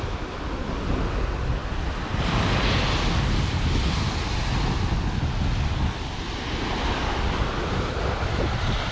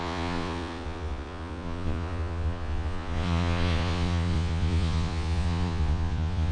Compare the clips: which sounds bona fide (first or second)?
first